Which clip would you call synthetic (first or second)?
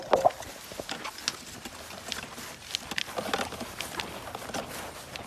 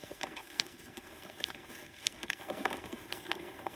second